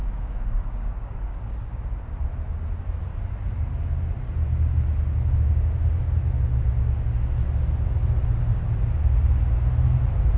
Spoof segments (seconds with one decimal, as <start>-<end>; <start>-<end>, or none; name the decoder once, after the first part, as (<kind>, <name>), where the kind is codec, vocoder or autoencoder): 0.0-1.7 (codec, DAC)